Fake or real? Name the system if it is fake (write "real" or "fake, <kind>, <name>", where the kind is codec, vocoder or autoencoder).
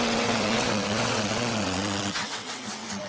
fake, vocoder, WaveNeXt